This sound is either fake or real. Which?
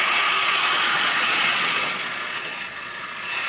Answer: fake